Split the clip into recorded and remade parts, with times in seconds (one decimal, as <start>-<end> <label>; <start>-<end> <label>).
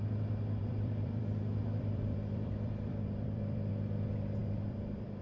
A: 0.0-0.6 recorded; 0.6-3.7 remade; 3.7-4.4 recorded; 4.4-5.2 remade